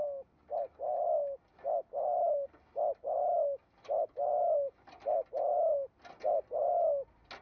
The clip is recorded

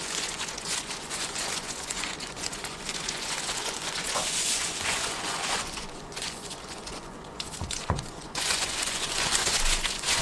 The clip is remade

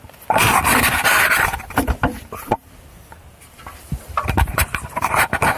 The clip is remade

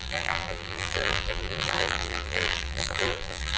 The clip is remade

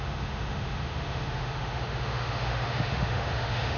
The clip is remade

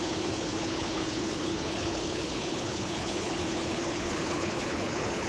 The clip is remade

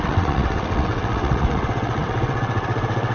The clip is remade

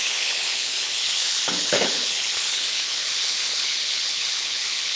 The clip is remade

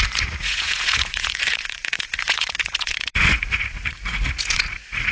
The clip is remade